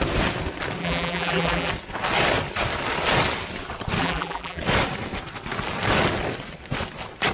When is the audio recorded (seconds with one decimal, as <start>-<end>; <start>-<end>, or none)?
0.0-0.8; 1.7-4.0; 4.6-7.3